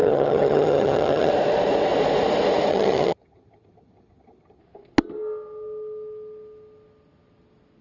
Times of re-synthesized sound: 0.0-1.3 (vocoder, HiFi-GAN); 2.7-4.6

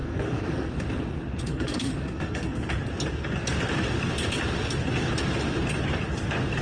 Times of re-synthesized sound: 0.0-0.7 (codec, SNAC); 1.5-2.7

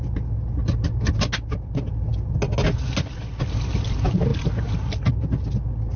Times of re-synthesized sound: none

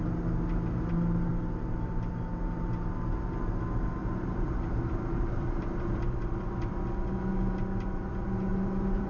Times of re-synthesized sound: 4.0-6.7 (vocoder, BigVGAN v2); 8.5-9.1

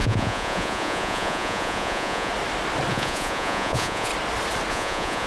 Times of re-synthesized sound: 0.0-2.3 (vocoder, Vocos); 2.9-4.1; 4.7-5.3

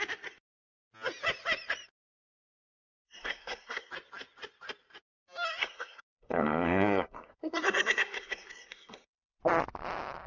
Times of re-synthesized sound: 2.7-3.9 (codec, SNAC); 5.6-9.1